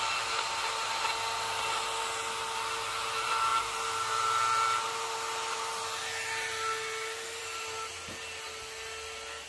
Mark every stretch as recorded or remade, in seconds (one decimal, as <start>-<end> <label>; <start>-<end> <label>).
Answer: 0.0-9.5 recorded